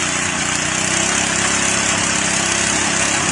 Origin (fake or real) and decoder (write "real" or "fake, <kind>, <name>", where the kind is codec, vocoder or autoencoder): real